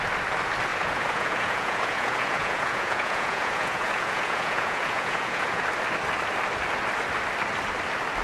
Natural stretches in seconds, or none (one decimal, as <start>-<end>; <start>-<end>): 0.0-0.7; 5.6-8.2